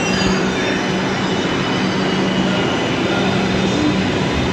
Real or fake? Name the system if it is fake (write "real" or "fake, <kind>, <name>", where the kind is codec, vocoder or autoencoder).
real